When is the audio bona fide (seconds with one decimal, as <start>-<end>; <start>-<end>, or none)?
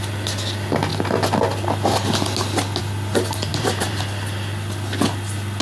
0.0-3.5; 4.0-5.6